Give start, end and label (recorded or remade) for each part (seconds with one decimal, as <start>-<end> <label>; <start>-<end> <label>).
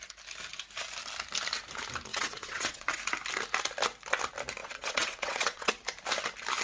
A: 0.0-2.1 recorded; 2.1-3.0 remade; 3.0-4.6 recorded; 4.6-5.7 remade; 5.7-6.6 recorded